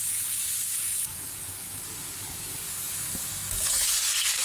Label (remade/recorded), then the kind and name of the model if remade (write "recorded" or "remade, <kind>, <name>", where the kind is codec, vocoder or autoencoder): remade, codec, DAC